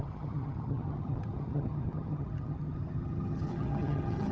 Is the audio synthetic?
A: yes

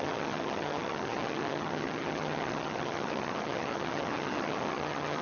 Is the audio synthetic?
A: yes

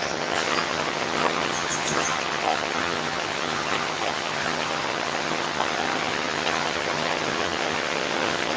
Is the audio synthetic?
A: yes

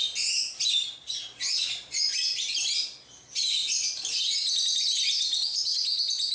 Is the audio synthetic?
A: no